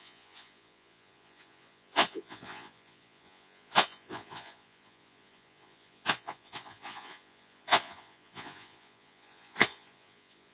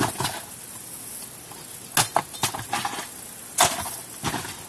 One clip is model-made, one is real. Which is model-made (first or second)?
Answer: first